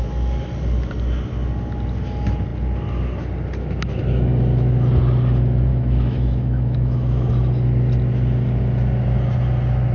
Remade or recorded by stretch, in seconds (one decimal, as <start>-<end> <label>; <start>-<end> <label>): 0.0-5.7 recorded; 5.7-7.3 remade; 7.3-9.9 recorded